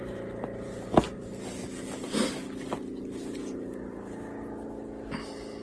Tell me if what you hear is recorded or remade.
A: recorded